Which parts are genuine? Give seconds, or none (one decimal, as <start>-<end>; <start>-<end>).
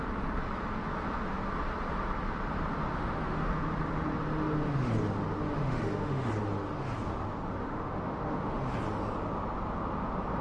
0.0-2.9; 3.5-5.6; 6.3-7.6; 8.6-10.4